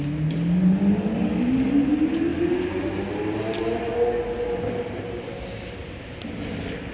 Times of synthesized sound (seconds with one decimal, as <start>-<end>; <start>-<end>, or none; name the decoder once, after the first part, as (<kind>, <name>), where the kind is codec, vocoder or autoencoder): none